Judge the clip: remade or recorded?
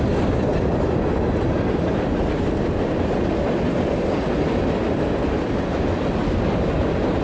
recorded